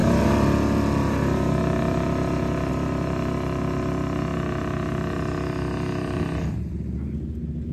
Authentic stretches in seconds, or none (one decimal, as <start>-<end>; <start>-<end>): 0.0-7.7